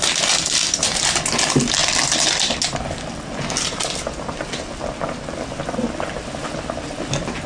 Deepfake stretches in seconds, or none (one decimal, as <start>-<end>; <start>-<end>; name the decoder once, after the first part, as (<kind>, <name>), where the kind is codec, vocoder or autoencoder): none